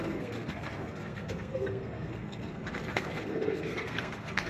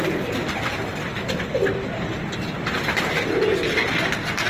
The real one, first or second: second